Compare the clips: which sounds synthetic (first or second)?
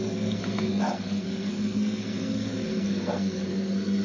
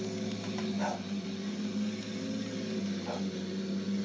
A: first